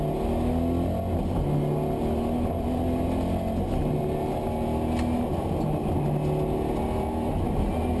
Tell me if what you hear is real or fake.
real